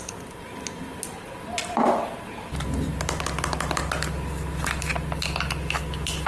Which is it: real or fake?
real